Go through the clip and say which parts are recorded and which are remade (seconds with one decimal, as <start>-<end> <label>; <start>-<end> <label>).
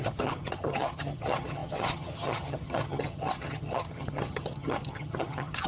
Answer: 0.0-5.7 remade